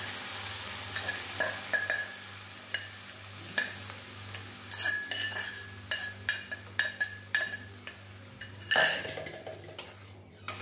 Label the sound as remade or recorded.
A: recorded